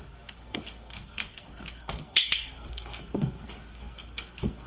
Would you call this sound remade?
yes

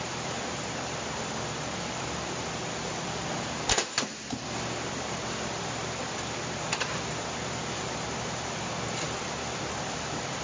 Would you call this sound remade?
yes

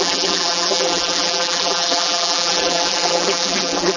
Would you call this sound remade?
yes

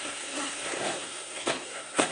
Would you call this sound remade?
yes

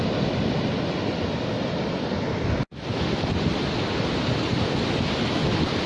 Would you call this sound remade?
no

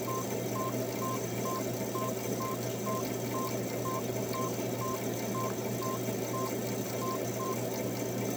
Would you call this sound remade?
yes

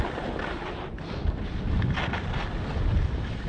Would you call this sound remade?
no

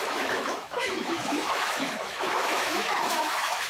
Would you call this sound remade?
yes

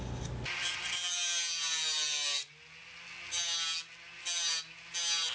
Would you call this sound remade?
no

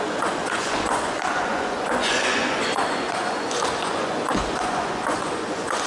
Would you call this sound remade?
yes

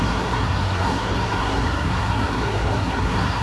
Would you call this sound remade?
yes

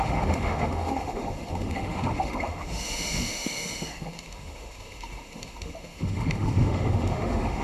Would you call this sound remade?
yes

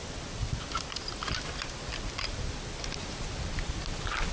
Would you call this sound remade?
no